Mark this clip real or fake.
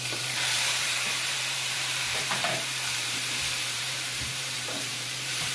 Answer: fake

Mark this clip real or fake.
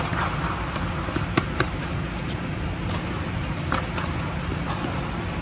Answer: real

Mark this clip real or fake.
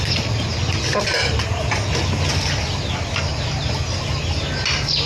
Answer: real